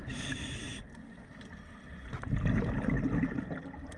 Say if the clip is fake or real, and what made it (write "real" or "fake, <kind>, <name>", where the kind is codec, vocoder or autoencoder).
real